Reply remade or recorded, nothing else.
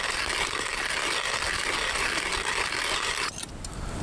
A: recorded